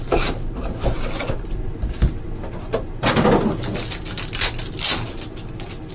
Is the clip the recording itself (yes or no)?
yes